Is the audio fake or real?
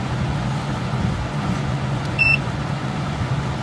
fake